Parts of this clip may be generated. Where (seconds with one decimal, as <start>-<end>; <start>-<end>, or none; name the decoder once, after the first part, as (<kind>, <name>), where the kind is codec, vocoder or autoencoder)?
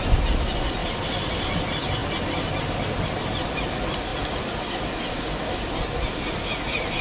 none